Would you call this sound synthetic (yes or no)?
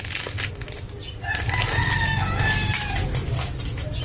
no